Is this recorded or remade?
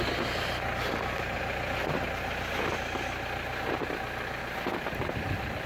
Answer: recorded